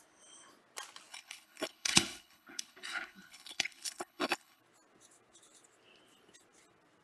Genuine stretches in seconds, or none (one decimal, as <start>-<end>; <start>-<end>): 0.0-1.1; 4.6-7.0